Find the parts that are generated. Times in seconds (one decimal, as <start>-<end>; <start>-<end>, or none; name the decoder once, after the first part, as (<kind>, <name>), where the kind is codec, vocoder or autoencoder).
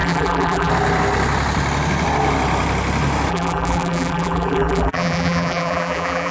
0.0-0.7 (vocoder, BigVGAN v2); 3.3-6.3